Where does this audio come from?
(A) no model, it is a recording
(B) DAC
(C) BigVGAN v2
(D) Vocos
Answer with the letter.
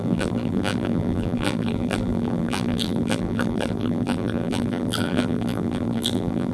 C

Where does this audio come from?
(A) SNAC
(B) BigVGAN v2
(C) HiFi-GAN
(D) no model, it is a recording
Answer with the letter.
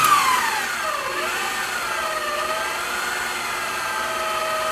D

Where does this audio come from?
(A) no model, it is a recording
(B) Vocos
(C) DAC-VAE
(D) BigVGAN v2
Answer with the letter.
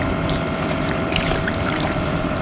D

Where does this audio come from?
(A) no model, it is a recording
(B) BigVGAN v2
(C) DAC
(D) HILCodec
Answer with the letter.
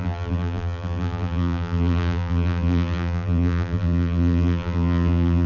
B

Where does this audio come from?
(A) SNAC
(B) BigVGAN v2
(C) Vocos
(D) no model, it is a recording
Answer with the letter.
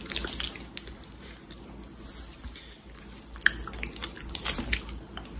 D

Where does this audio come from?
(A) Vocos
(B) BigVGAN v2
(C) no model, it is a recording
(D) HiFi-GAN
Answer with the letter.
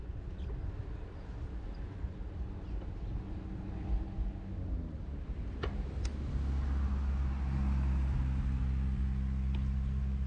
C